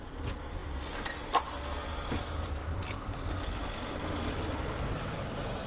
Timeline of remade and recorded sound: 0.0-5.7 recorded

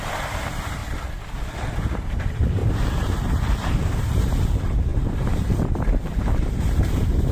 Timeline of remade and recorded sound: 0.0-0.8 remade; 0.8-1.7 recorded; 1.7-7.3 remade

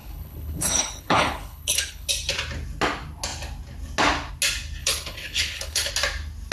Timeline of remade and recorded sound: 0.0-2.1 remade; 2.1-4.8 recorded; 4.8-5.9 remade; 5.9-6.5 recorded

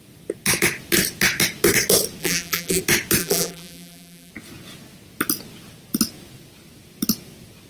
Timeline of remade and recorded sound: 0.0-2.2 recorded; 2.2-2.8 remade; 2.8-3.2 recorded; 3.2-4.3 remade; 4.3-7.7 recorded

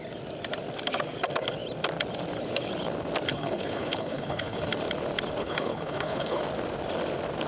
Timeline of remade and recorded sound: 0.0-3.3 recorded; 3.3-4.7 remade; 4.7-5.4 recorded; 5.4-6.4 remade; 6.4-7.5 recorded